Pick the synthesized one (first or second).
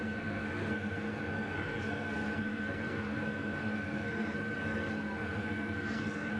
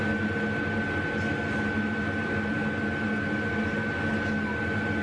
first